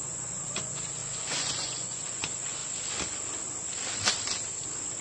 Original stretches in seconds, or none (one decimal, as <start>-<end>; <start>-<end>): 2.6-5.0